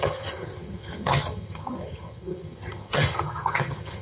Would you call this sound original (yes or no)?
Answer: no